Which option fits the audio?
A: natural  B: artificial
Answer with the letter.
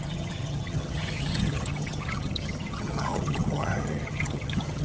B